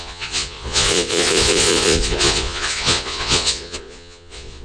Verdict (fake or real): fake